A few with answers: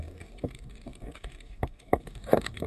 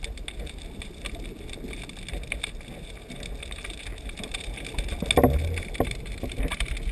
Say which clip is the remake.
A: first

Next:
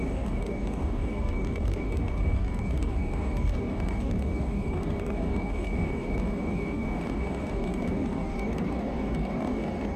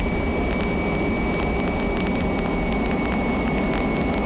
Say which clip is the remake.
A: first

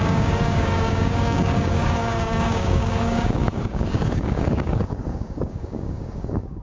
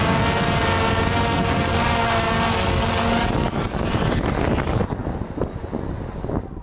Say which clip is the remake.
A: first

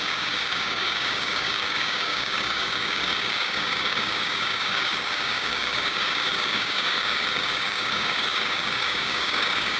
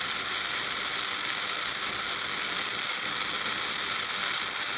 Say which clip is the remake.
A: first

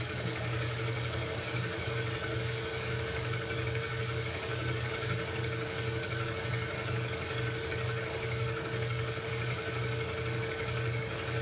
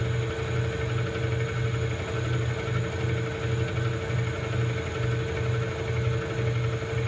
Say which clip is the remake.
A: first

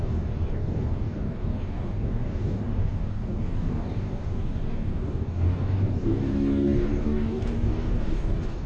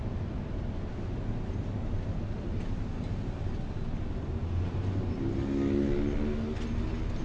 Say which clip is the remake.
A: first